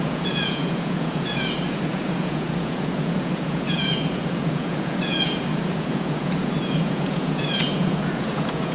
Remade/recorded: remade